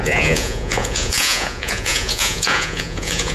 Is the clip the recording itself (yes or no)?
no